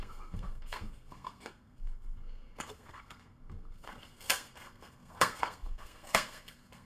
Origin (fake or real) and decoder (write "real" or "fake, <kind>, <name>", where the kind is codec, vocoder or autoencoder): fake, codec, SNAC